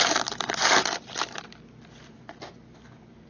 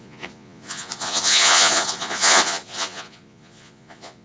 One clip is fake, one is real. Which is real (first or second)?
first